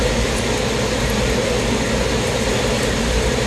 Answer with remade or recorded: recorded